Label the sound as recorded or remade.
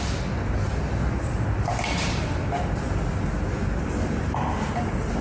recorded